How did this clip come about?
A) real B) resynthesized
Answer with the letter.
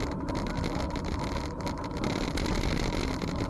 A